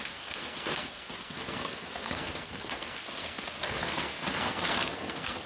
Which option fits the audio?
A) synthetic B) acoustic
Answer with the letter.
A